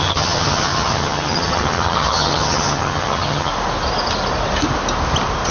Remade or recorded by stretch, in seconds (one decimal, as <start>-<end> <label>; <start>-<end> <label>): 0.0-3.5 remade; 3.5-5.5 recorded